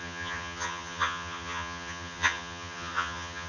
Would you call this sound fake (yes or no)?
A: yes